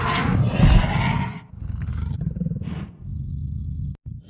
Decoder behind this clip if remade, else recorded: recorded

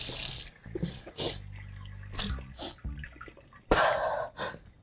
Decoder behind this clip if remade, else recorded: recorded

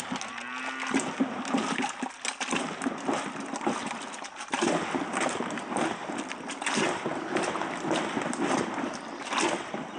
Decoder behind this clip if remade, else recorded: recorded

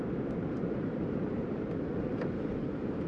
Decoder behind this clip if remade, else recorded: remade, vocoder, BigVGAN v2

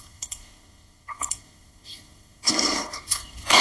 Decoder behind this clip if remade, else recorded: remade, codec, SNAC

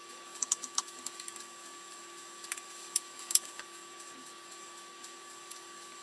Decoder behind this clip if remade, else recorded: remade, codec, DAC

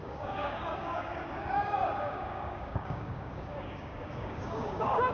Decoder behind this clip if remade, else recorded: remade, codec, DAC